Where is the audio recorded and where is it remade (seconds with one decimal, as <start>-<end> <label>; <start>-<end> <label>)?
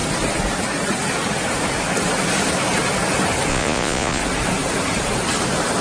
0.0-3.5 recorded; 3.5-4.2 remade; 4.2-5.8 recorded